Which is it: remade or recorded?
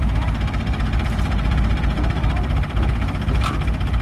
recorded